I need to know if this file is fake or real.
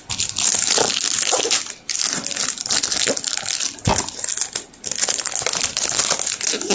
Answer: real